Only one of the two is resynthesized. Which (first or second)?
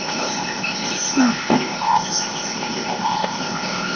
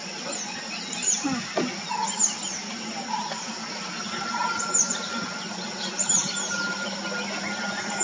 first